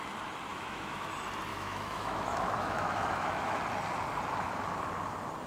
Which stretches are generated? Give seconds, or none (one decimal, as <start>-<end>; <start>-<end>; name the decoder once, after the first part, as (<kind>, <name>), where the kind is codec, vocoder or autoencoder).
0.5-1.1 (autoencoder, DAC-VAE); 1.5-3.6